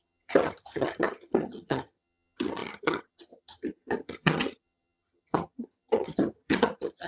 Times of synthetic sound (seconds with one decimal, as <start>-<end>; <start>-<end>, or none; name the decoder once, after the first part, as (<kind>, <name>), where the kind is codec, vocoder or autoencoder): 0.0-7.1 (vocoder, HiFi-GAN)